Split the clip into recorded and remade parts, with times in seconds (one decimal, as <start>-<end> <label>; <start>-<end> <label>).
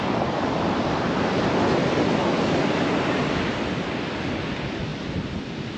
0.0-5.8 recorded